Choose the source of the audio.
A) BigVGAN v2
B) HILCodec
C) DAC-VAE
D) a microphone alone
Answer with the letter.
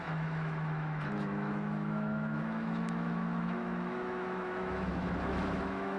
C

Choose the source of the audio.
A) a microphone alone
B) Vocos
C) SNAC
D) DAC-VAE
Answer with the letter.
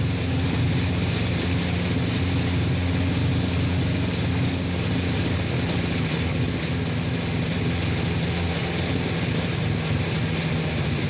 A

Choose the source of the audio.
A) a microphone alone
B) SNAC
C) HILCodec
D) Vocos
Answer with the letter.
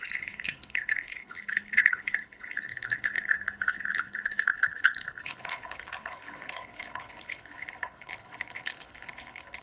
C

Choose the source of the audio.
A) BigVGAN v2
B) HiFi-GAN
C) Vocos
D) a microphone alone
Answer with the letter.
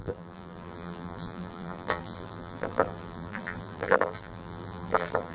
A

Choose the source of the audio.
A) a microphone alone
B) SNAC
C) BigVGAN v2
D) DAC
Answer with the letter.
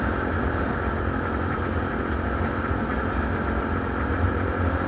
A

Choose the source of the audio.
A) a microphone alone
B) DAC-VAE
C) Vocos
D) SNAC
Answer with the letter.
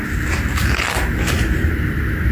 A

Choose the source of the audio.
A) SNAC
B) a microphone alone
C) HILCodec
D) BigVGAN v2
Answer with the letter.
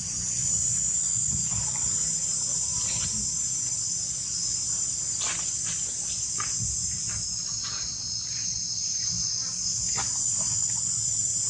D